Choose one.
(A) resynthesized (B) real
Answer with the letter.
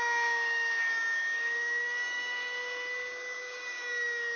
A